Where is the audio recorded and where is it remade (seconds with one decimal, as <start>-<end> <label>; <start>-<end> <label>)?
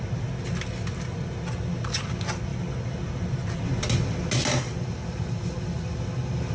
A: 0.0-6.5 recorded